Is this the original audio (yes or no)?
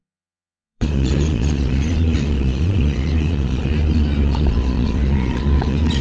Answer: no